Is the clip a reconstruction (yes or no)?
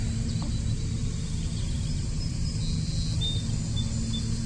no